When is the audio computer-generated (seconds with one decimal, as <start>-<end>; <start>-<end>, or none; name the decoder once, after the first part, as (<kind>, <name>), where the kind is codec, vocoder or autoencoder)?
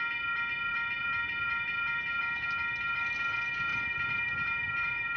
0.7-2.2 (vocoder, BigVGAN v2); 3.7-5.2